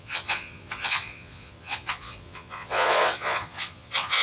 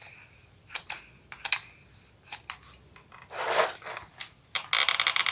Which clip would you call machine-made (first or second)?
first